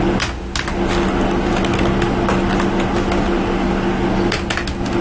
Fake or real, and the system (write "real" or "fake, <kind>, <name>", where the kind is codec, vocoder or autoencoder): real